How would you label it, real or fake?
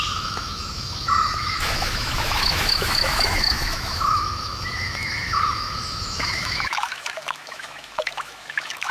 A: fake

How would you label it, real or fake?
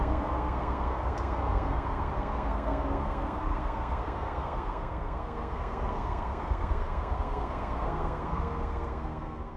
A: fake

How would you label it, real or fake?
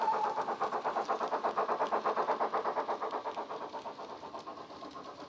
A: real